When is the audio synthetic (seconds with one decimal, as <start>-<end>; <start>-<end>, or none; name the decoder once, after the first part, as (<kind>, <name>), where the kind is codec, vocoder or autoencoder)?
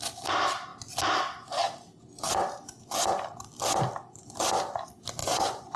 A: 5.2-5.8 (vocoder, Vocos)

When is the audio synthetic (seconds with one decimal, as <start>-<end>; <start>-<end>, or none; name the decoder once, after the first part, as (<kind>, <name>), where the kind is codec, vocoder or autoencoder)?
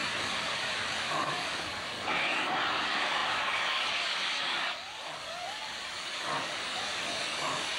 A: 0.0-7.8 (codec, DAC)